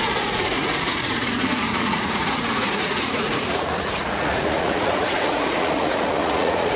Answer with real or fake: fake